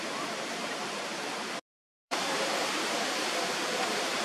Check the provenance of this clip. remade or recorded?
remade